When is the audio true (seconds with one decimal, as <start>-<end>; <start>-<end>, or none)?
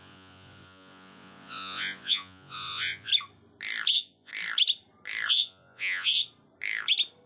3.1-3.9; 4.3-5.3; 6.2-7.3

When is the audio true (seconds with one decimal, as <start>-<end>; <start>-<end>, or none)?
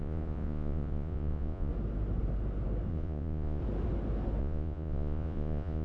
1.7-2.9; 3.6-4.4